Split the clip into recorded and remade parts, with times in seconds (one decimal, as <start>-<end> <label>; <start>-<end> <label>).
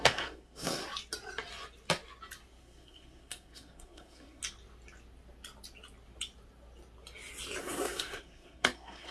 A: 0.0-0.8 remade; 0.8-2.6 recorded; 2.6-4.4 remade; 4.4-7.6 recorded; 7.6-9.1 remade